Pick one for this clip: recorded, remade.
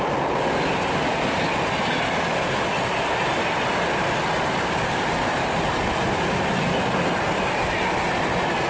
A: recorded